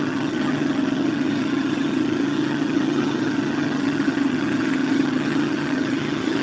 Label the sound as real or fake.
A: fake